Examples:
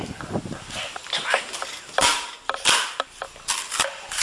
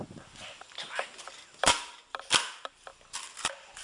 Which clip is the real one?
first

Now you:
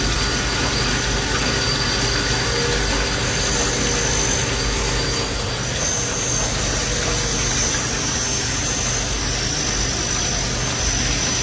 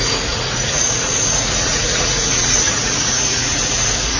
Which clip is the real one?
first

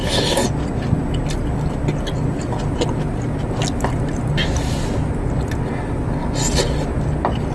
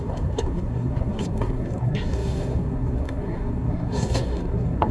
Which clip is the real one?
first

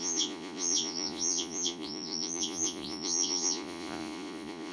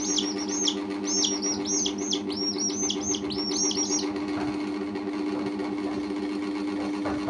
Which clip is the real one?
second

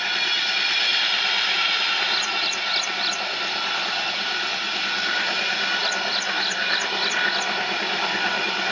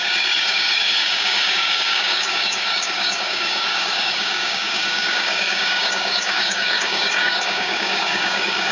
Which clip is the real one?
first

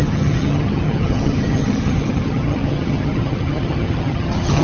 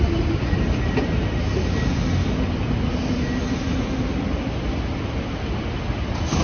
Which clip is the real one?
second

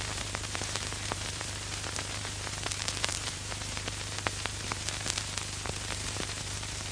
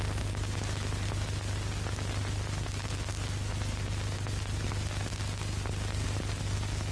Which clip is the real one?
second